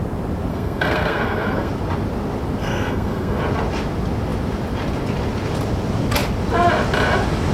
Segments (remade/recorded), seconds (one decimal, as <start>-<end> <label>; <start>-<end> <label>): 0.0-0.5 recorded; 0.5-1.7 remade; 1.7-2.6 recorded; 2.6-3.4 remade; 3.4-7.5 recorded